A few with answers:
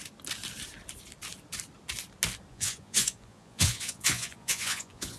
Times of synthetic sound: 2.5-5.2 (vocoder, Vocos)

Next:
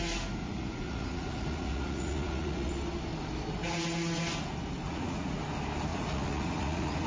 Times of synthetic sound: 0.4-2.7 (vocoder, Vocos); 4.8-5.4; 5.9-7.1

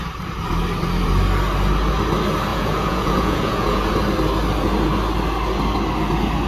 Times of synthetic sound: 2.5-3.9 (vocoder, Vocos)

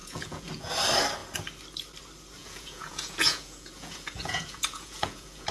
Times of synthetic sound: 0.0-0.7 (vocoder, Vocos); 2.4-5.5

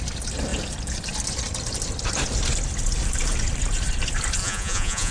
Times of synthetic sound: 4.4-5.1 (vocoder, Vocos)